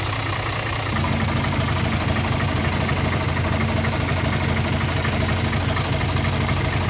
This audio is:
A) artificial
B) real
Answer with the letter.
B